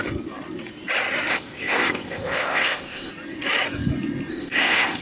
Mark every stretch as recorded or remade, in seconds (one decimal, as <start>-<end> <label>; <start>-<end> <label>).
0.0-1.3 recorded; 1.3-3.1 remade; 3.1-4.3 recorded; 4.3-5.0 remade